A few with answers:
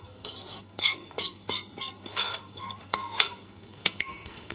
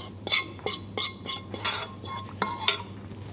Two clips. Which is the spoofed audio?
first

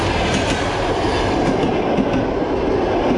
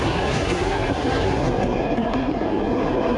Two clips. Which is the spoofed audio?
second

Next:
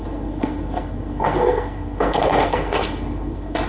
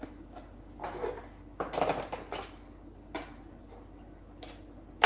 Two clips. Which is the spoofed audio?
first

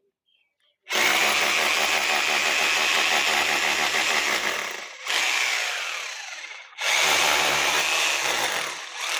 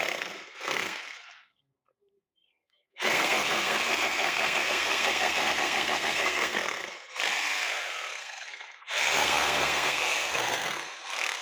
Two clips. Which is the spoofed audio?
second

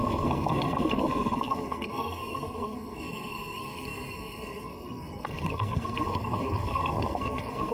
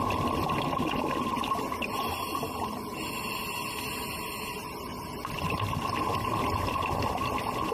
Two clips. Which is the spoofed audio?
first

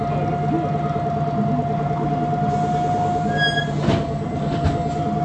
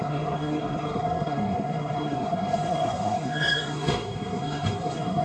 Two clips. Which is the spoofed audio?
second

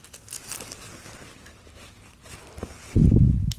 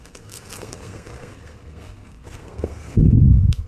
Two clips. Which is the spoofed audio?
second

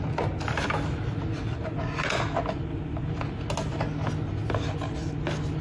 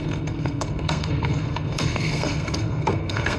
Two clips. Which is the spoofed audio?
second